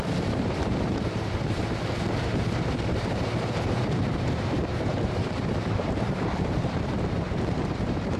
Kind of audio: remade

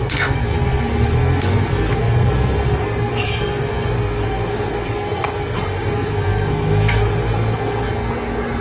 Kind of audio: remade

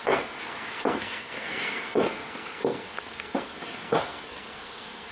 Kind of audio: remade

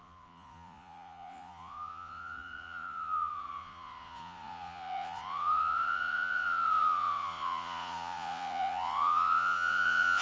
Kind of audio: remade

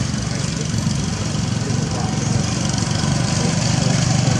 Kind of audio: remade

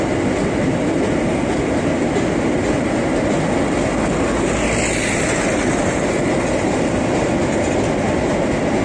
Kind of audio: recorded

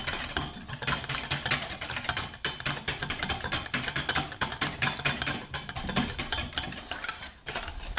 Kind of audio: recorded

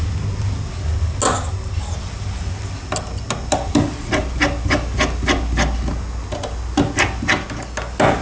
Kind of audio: recorded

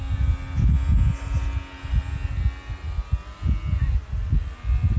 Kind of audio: recorded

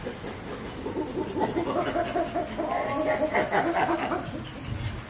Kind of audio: recorded